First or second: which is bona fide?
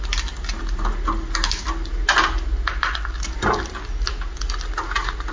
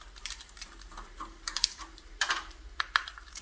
first